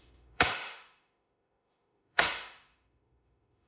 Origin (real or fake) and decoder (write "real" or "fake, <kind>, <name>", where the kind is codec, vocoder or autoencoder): fake, autoencoder, DAC-VAE